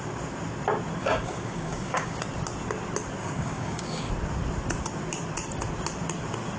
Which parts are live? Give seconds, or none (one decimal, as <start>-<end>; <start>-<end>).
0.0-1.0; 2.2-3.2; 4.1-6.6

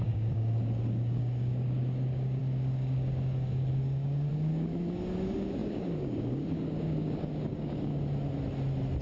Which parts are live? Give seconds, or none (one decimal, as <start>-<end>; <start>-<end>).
7.9-9.0

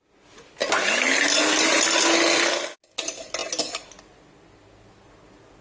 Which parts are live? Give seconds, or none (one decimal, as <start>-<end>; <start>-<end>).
0.0-5.6

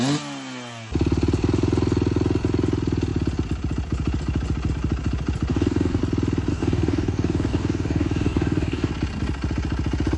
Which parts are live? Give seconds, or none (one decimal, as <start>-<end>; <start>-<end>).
0.0-5.5; 6.0-6.5; 8.9-10.2

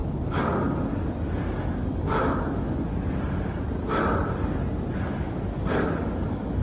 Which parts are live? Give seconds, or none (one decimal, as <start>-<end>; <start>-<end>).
0.0-1.7; 2.9-4.9